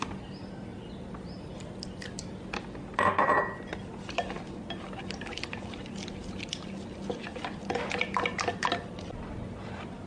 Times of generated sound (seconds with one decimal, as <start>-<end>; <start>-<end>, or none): none